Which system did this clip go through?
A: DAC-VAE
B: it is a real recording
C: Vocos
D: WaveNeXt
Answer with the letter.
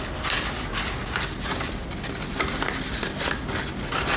B